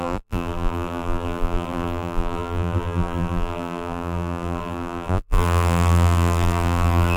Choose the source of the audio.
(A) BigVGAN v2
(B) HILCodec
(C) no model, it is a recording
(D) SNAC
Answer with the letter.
A